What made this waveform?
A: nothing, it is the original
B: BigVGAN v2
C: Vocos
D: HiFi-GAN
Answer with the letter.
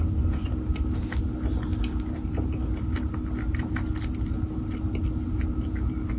A